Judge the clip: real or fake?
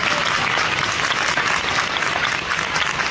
real